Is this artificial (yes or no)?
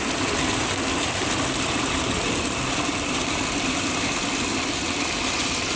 yes